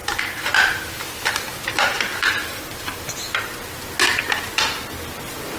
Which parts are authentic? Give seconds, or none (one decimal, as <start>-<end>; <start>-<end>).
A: 3.4-5.6